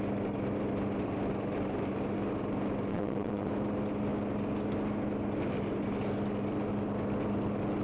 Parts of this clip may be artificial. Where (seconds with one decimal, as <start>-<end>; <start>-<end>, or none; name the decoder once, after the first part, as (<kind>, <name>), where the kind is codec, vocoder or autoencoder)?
2.9-3.5 (vocoder, WaveNeXt)